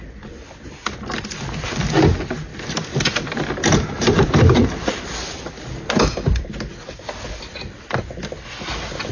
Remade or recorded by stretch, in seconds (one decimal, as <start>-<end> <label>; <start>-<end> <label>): 0.0-2.5 recorded; 2.5-5.8 remade; 5.8-9.1 recorded